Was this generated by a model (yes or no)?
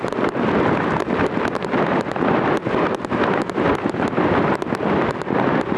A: no